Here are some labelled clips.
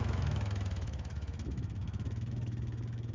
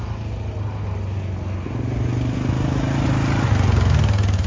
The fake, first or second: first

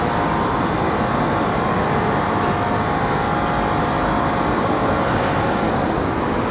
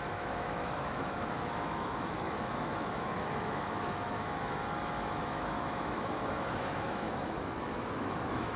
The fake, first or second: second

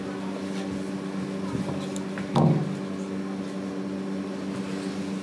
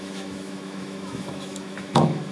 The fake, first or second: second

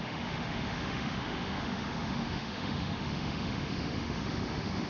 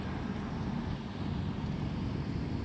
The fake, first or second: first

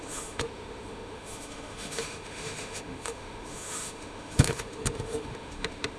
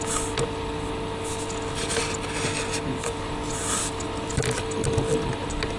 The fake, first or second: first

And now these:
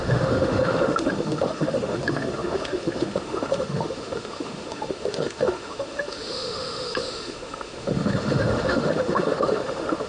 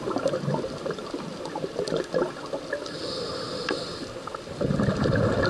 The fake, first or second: first